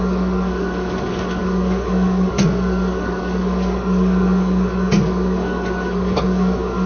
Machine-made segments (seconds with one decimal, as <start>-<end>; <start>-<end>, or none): 0.0-6.9